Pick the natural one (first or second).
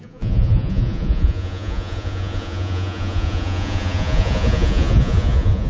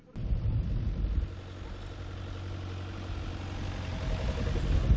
second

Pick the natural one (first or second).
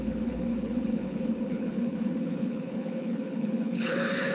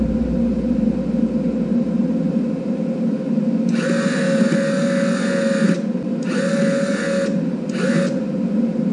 second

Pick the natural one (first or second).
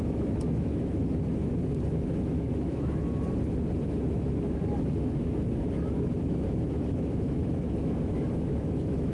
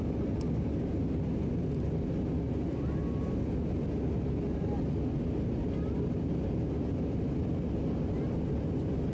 second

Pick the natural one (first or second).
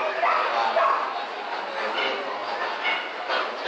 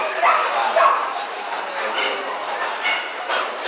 first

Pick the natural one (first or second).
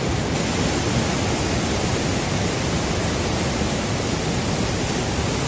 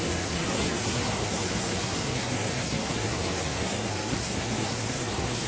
first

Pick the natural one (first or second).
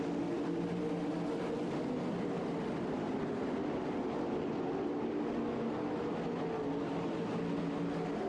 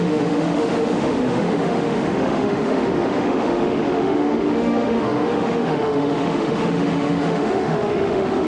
first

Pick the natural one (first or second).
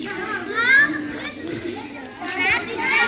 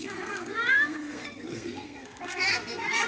first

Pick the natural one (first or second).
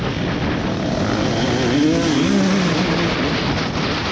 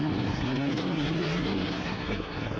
first